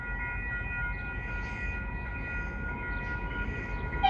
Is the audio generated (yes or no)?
no